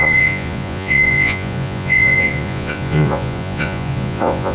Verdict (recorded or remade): remade